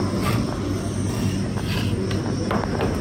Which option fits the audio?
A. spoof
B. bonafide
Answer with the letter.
B